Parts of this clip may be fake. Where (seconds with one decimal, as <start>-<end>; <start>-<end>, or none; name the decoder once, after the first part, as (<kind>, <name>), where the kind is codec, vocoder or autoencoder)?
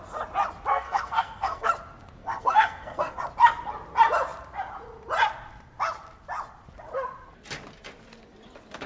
0.7-1.7 (codec, SNAC); 2.2-3.2